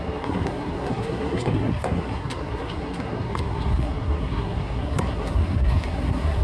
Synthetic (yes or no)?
yes